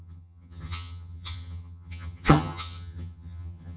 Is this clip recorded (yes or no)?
no